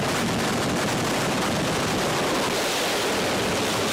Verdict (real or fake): real